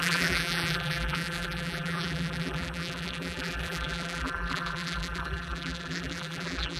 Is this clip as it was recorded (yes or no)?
no